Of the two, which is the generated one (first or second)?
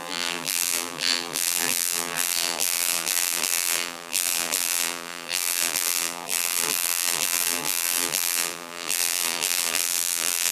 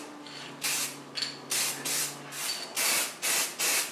first